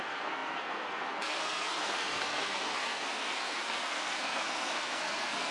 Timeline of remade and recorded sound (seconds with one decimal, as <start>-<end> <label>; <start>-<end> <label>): 0.0-5.5 remade